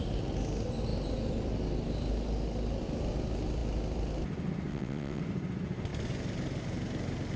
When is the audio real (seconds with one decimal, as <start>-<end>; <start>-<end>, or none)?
0.0-4.7; 5.2-7.4